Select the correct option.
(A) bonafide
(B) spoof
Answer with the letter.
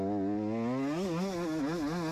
A